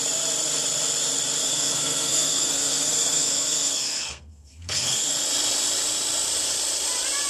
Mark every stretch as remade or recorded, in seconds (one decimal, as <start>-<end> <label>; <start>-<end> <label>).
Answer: 0.0-1.4 recorded; 1.4-5.1 remade; 5.1-7.3 recorded